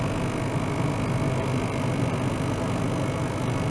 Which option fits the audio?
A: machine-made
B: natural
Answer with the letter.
B